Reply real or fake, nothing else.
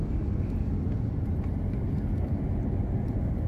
real